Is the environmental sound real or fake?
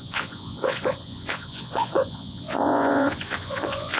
fake